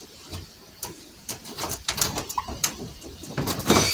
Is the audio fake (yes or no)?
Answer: yes